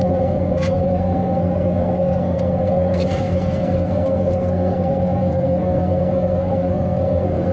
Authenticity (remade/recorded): remade